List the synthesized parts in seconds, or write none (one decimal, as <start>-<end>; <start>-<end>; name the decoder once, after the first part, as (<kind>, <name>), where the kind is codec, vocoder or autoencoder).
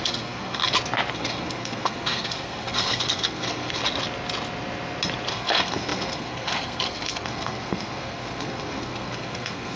0.0-0.6 (codec, SNAC); 1.1-3.8; 5.3-9.8